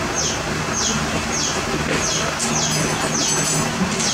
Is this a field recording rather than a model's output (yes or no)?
yes